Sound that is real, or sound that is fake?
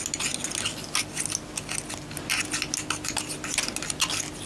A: real